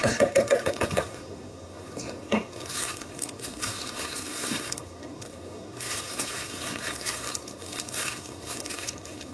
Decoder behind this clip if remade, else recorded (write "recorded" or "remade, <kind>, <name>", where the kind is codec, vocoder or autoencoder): remade, codec, SNAC